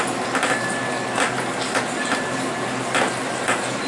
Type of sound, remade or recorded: recorded